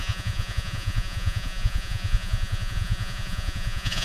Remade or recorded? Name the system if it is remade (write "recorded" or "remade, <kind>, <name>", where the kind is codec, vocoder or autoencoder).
remade, vocoder, Vocos